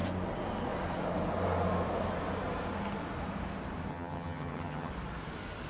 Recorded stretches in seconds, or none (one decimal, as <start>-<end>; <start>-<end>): 0.0-3.9; 4.9-5.7